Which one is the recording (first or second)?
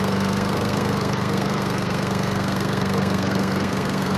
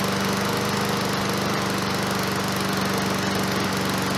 second